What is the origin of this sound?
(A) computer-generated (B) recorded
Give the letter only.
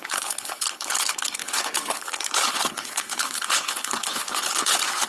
A